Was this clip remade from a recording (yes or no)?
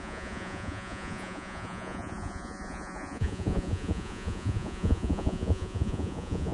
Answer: yes